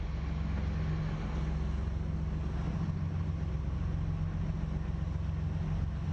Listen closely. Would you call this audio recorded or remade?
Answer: recorded